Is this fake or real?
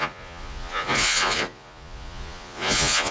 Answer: fake